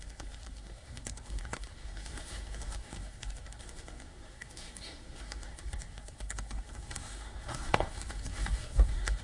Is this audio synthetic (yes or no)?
yes